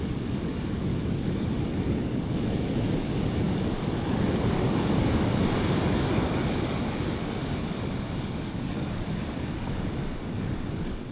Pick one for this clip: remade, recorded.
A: remade